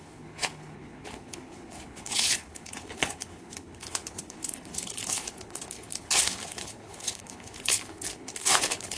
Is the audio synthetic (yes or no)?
yes